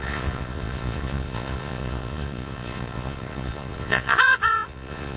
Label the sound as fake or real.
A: fake